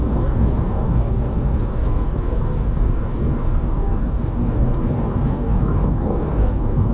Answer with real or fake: fake